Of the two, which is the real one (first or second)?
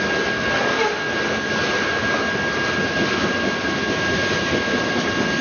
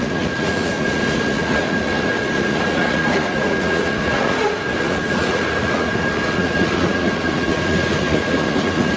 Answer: first